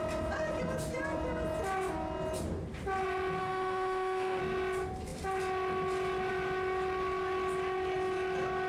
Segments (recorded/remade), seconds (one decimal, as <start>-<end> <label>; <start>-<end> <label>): 0.0-3.4 recorded; 3.4-4.4 remade; 4.4-8.7 recorded